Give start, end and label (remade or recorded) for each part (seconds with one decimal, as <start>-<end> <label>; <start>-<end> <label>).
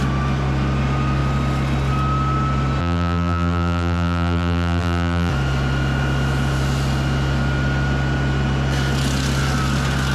0.0-2.8 recorded; 2.8-5.3 remade; 5.3-10.1 recorded